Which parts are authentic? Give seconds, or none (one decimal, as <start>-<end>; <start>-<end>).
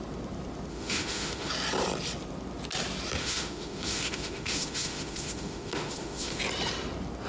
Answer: 0.0-0.7; 1.5-3.2; 6.4-7.3